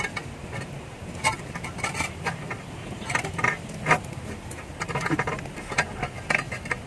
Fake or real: real